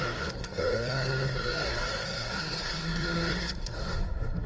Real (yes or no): no